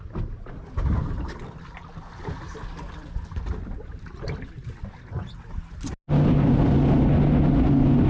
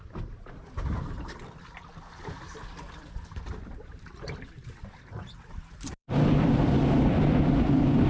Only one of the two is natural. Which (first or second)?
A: first